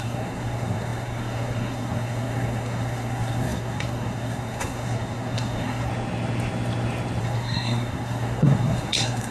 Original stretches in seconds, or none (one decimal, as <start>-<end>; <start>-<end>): 5.9-7.2